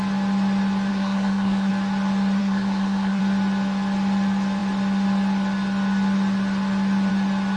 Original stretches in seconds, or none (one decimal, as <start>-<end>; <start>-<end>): 0.0-0.9; 1.7-2.4; 3.2-7.6